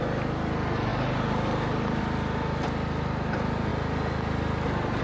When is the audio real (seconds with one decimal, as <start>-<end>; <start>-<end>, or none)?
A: 0.0-5.0